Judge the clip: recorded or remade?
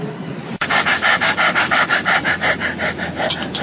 recorded